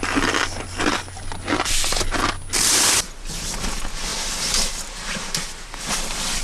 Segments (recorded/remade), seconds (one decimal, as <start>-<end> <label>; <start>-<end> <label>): 0.0-6.4 recorded